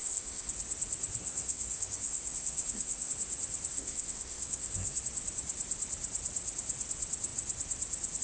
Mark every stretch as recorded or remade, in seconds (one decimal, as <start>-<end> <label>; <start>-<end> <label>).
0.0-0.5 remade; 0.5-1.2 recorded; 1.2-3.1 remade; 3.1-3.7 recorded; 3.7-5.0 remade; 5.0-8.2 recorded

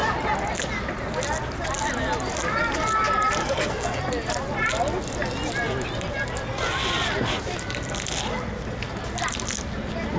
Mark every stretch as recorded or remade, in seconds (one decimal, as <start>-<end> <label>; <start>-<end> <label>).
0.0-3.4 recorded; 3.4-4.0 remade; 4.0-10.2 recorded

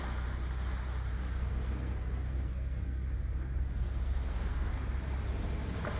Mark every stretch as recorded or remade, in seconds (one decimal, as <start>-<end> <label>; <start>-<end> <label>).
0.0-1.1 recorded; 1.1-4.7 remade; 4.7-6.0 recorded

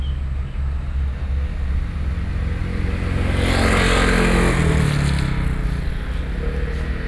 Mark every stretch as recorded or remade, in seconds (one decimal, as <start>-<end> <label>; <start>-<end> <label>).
0.0-7.1 recorded

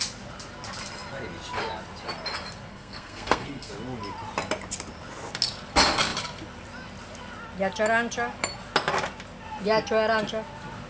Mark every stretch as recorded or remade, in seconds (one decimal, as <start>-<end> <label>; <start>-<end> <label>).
0.0-2.7 recorded; 2.7-3.7 remade; 3.7-10.9 recorded